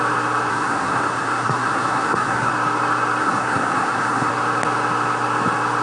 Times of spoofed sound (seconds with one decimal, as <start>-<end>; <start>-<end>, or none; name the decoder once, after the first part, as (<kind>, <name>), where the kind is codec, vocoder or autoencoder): 0.5-2.5 (codec, SNAC); 3.2-4.3